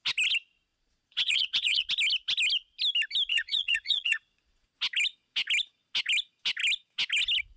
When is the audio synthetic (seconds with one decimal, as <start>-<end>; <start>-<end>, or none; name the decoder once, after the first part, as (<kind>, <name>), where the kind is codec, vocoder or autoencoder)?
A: 0.7-1.9 (vocoder, Vocos); 3.3-4.8